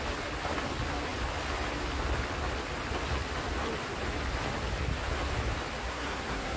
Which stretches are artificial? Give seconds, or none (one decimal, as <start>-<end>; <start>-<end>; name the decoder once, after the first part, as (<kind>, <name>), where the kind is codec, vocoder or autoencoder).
5.8-6.6 (codec, SNAC)